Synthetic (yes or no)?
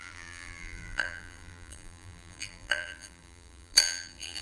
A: yes